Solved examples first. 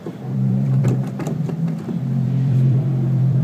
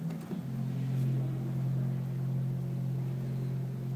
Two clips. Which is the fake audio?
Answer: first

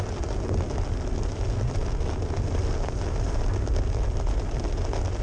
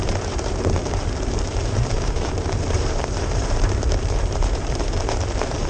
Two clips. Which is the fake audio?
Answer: second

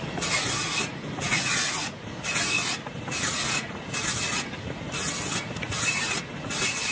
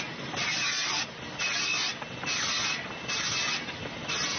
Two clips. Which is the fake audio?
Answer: first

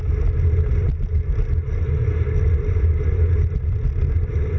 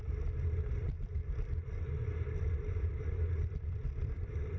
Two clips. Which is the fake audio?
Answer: second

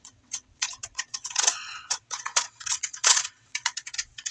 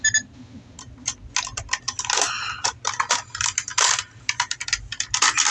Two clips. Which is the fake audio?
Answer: first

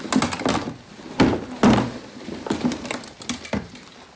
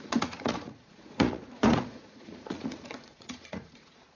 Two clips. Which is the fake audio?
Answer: second